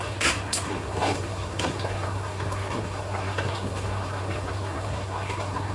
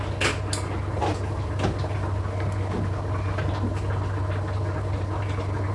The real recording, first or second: second